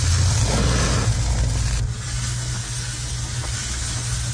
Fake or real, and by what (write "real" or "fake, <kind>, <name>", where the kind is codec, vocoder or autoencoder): real